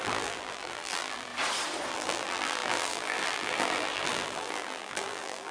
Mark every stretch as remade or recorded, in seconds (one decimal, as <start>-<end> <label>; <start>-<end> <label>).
0.0-1.3 remade; 1.3-1.9 recorded; 1.9-5.5 remade